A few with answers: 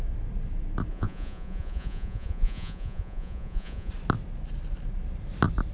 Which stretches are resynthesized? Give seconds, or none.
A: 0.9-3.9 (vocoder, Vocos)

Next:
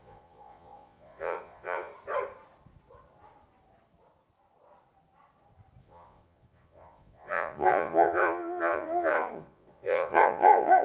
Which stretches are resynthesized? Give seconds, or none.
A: 0.0-1.9 (vocoder, Vocos); 5.8-10.8

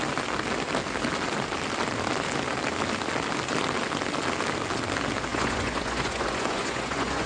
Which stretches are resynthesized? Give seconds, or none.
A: 5.3-7.3 (vocoder, Vocos)

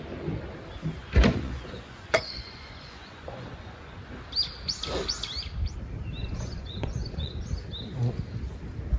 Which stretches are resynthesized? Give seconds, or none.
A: 1.0-4.2 (vocoder, Vocos); 6.2-7.5

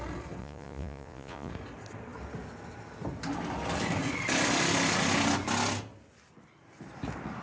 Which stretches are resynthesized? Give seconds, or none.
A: 0.4-1.5 (vocoder, Vocos)

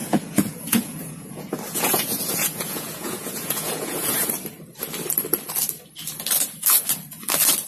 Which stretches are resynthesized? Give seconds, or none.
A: 0.0-4.3 (vocoder, Vocos)

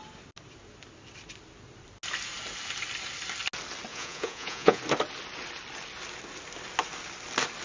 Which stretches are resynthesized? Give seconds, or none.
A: 3.9-4.8 (vocoder, Vocos)

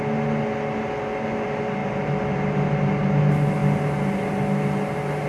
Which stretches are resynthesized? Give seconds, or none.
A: none